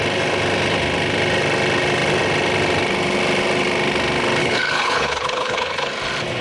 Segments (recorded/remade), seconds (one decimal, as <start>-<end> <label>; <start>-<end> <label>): 0.0-4.4 recorded; 4.4-5.9 remade; 5.9-6.4 recorded